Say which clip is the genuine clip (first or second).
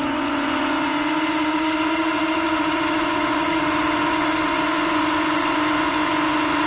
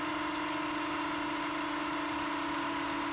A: second